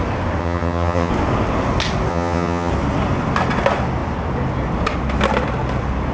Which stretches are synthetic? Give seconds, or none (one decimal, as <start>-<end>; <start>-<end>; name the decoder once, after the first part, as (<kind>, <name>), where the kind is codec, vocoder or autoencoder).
0.4-1.1 (vocoder, HiFi-GAN); 2.1-2.7